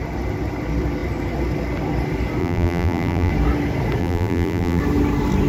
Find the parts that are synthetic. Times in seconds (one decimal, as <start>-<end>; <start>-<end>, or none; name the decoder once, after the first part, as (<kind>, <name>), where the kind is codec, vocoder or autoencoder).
2.4-3.3 (vocoder, BigVGAN v2); 4.0-4.8